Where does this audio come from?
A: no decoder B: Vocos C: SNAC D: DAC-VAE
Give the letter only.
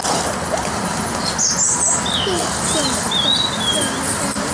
A